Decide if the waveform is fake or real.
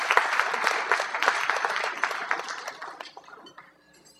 real